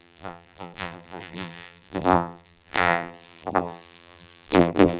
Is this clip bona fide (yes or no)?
no